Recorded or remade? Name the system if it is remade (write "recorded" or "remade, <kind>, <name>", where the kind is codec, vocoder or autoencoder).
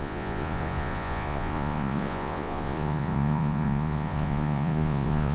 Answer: remade, vocoder, Vocos